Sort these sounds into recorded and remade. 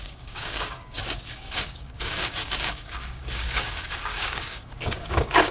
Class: remade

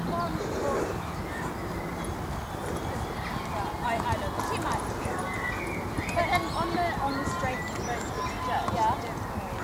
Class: recorded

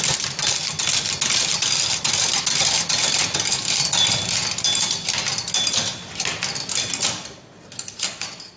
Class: recorded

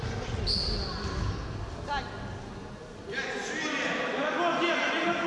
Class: recorded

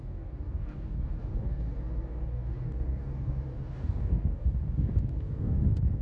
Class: remade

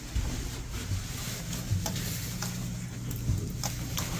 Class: recorded